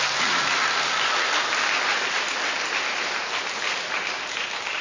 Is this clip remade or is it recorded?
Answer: recorded